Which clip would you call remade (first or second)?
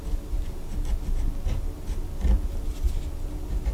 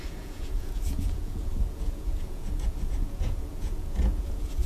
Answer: second